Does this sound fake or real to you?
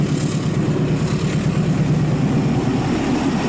real